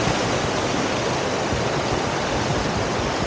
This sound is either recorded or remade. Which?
recorded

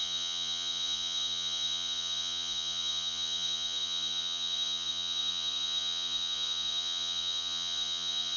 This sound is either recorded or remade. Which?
remade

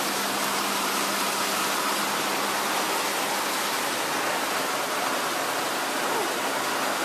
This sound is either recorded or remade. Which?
recorded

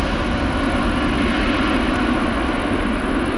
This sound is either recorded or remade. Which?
recorded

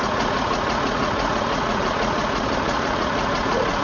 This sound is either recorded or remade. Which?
remade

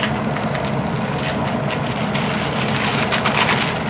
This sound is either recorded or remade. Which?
recorded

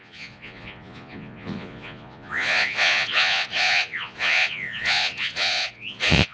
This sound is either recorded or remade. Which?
remade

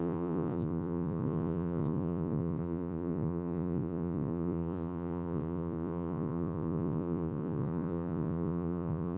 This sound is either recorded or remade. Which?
remade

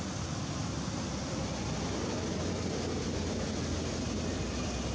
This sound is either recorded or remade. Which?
recorded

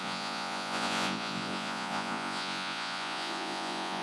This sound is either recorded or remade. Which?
remade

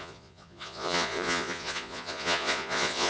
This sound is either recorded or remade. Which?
remade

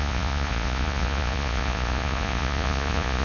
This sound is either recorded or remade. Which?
remade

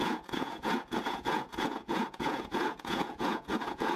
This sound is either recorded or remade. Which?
remade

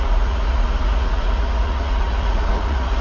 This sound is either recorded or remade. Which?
remade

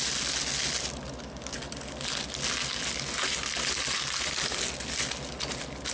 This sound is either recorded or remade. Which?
recorded